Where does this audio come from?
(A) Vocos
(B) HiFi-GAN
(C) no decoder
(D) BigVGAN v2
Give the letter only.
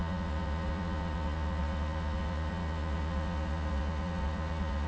A